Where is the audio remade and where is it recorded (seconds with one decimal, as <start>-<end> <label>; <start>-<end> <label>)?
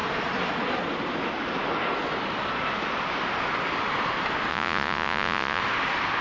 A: 0.0-4.5 recorded; 4.5-5.6 remade; 5.6-6.2 recorded